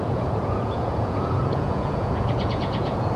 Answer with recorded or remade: remade